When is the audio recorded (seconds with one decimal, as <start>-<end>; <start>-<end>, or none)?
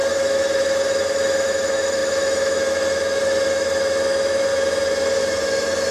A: 4.5-5.2